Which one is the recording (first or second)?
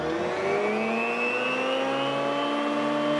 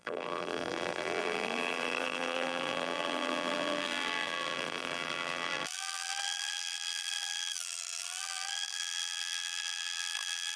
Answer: first